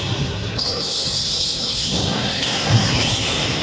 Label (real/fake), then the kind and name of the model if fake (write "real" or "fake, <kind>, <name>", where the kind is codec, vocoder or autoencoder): fake, codec, SNAC